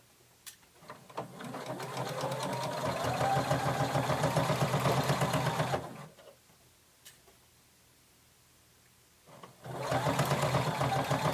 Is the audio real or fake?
real